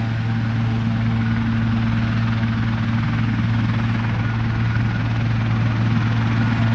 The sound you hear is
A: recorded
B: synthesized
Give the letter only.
A